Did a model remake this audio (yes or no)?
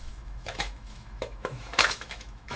yes